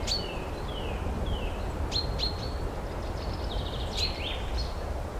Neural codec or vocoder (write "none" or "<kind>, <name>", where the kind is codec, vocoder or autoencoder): none